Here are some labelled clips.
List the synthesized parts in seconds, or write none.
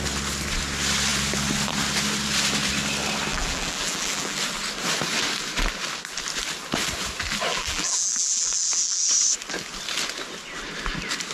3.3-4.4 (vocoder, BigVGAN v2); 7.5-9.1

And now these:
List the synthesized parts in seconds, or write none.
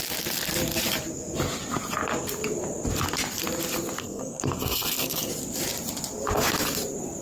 4.0-5.3 (codec, SNAC)